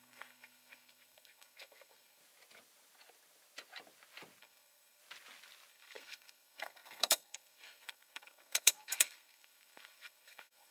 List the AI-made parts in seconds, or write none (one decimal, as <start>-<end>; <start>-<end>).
0.0-2.2; 4.4-5.0; 5.7-10.7